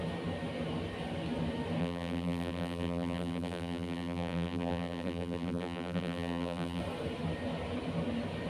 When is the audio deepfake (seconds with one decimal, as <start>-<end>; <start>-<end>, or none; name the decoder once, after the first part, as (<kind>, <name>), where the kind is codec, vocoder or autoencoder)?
1.8-6.8 (vocoder, BigVGAN v2)